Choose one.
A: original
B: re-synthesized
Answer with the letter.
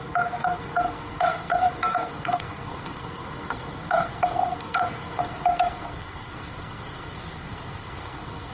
B